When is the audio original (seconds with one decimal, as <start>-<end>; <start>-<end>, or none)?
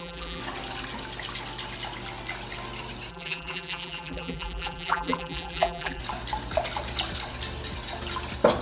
0.4-3.1; 6.0-8.6